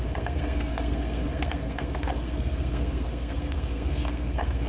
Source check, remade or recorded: remade